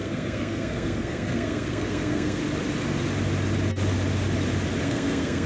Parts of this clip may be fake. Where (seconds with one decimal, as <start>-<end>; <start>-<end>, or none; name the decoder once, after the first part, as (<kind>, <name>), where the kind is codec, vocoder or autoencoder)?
0.0-2.4 (codec, SNAC); 4.8-5.5

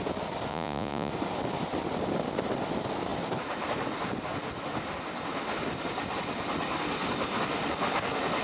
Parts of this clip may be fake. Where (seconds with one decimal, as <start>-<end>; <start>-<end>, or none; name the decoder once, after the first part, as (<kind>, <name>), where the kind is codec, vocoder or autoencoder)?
0.5-1.1 (vocoder, Vocos)

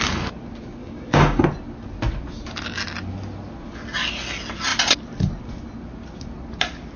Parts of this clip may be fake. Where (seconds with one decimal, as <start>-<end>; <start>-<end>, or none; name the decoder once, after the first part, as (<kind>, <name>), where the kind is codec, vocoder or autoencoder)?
0.8-1.4 (codec, DAC)